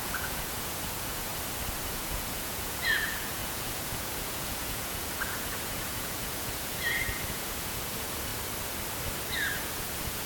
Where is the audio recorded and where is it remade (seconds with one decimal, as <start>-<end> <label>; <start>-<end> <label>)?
0.0-1.3 remade; 1.3-1.9 recorded; 1.9-8.3 remade; 8.3-9.6 recorded; 9.6-10.3 remade